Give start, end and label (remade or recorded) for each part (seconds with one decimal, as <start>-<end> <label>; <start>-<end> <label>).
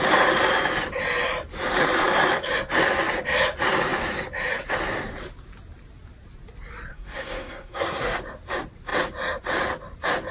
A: 0.0-6.9 recorded; 6.9-8.2 remade; 8.2-10.3 recorded